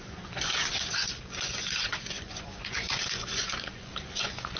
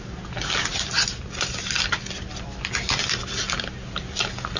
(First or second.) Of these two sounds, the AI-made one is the first